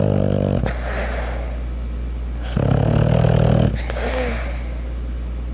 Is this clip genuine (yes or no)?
yes